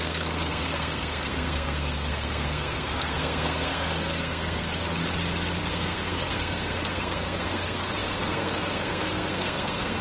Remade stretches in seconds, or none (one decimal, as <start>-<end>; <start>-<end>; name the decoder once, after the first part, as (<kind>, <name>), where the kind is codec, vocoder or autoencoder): 0.0-4.7 (codec, SNAC); 5.6-10.0